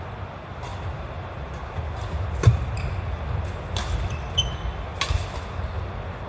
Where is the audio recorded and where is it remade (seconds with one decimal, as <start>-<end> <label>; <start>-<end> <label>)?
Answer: 0.0-6.3 recorded